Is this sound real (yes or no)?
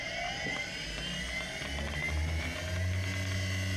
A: yes